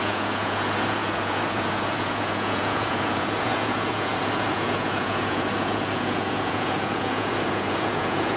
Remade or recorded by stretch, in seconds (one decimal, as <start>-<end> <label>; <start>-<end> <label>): 0.0-8.4 remade